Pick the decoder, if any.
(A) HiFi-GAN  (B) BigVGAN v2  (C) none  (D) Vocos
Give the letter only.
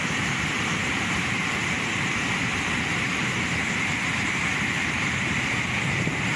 B